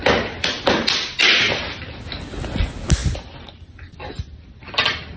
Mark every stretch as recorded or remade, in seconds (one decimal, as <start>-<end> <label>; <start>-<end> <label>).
0.0-5.2 recorded